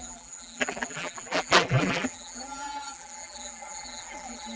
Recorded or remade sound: remade